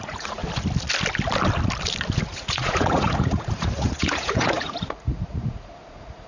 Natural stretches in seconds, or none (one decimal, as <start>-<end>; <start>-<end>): 0.4-2.2